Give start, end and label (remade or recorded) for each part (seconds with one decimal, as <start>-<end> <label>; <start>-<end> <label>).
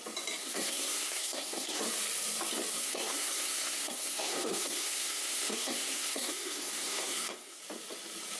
0.0-0.4 recorded; 0.4-1.8 remade; 1.8-2.7 recorded; 2.7-7.6 remade; 7.6-8.4 recorded